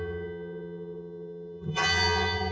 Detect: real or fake fake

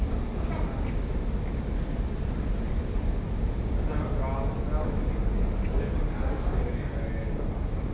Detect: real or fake real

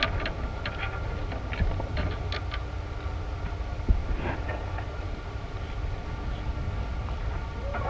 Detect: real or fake real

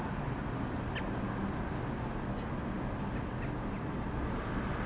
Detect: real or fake real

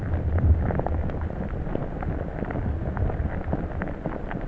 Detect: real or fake real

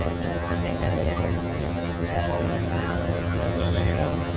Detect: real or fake fake